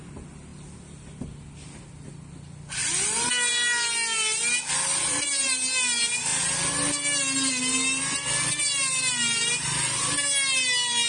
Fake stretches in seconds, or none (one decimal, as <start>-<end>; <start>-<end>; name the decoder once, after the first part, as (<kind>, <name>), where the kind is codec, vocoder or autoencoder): none